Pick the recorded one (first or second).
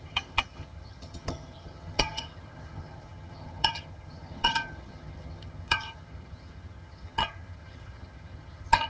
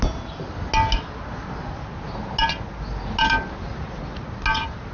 second